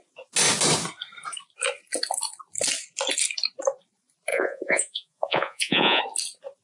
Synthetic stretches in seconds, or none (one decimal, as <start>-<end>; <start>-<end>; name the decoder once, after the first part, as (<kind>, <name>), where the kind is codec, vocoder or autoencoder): 4.3-6.0 (vocoder, Vocos)